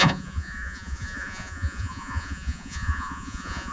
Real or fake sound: fake